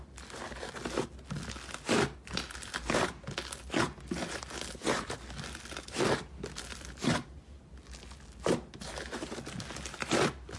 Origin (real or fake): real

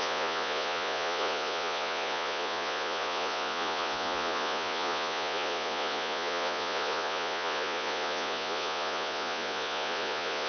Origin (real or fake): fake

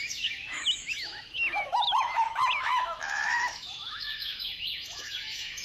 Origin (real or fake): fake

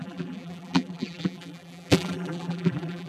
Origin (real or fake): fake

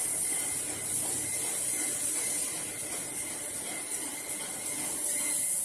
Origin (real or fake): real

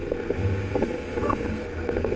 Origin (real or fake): fake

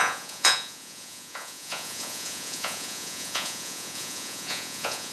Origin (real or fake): fake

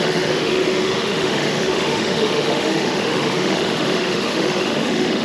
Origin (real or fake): fake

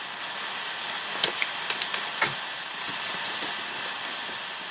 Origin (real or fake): real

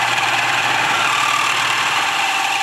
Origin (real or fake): fake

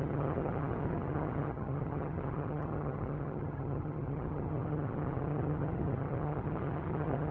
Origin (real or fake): fake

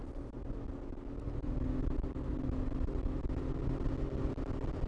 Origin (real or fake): real